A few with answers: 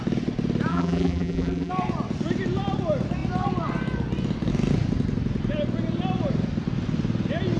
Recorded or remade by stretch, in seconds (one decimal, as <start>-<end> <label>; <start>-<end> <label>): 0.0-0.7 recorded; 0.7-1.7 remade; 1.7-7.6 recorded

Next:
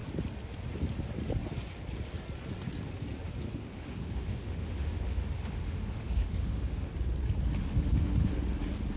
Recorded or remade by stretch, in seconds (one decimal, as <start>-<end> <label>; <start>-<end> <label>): 0.0-3.5 recorded; 3.5-6.9 remade; 6.9-7.7 recorded; 7.7-8.3 remade; 8.3-9.0 recorded

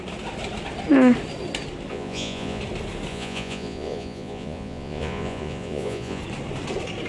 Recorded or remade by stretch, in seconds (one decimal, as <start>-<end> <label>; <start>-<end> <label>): 0.0-1.9 recorded; 1.9-2.6 remade; 2.6-3.1 recorded; 3.1-6.2 remade; 6.2-7.1 recorded

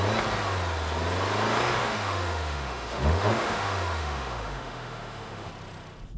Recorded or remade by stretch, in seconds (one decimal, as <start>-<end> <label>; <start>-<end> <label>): 0.0-1.8 recorded; 1.8-5.5 remade; 5.5-6.2 recorded

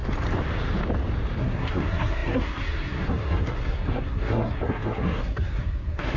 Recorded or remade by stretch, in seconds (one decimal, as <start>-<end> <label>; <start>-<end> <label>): 0.0-1.4 recorded; 1.4-6.2 remade

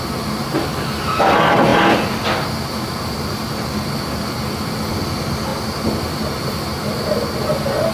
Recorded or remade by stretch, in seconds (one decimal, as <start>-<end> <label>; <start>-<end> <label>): 0.0-7.9 recorded

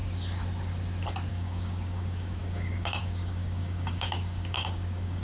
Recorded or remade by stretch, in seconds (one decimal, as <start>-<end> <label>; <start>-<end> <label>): 0.0-1.3 recorded; 1.3-5.2 remade